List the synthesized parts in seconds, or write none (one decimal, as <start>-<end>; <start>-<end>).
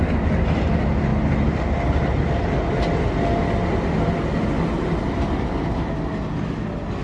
none